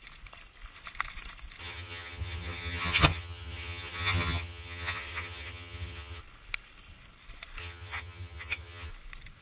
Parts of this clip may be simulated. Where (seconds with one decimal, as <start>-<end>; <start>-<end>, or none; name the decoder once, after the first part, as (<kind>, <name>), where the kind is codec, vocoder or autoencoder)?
1.6-6.2 (vocoder, HiFi-GAN); 7.6-8.9

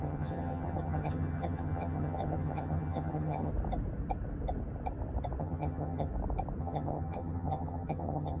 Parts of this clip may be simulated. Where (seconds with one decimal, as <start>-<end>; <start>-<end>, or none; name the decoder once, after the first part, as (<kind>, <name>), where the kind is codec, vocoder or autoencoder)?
0.0-3.5 (vocoder, HiFi-GAN); 5.4-6.1; 6.6-8.4

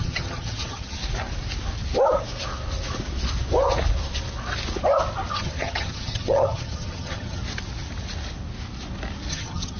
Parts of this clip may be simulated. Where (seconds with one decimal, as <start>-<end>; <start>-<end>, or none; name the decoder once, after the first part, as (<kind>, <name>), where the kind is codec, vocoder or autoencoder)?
0.0-1.0 (vocoder, HiFi-GAN); 5.3-7.4; 9.3-9.8